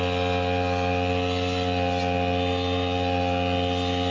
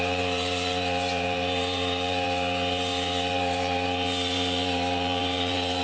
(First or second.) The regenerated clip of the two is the second